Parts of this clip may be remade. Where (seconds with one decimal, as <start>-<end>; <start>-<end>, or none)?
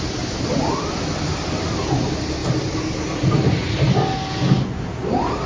none